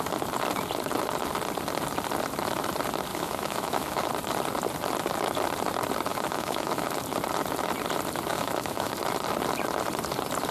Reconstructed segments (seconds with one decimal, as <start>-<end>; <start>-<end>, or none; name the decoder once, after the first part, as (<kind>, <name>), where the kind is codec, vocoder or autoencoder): 3.1-4.1 (autoencoder, DAC-VAE); 6.1-6.9; 8.3-8.9